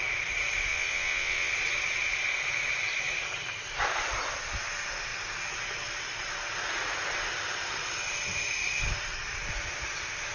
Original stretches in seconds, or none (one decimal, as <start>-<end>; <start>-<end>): 0.0-0.7; 1.5-10.3